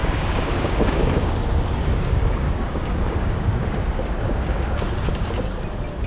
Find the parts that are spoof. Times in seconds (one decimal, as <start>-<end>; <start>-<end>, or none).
0.0-1.3; 1.8-5.5